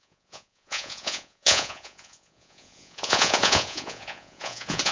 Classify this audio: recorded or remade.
remade